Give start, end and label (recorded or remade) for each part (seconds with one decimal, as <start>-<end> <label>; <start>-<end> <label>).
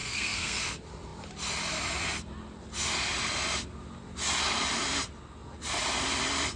0.0-0.6 remade; 0.6-6.6 recorded